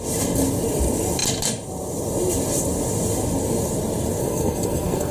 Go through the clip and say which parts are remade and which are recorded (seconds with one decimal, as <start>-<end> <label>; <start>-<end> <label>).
0.0-4.2 recorded; 4.2-5.1 remade